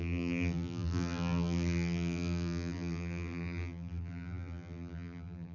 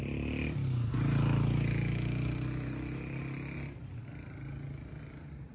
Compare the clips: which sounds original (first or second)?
second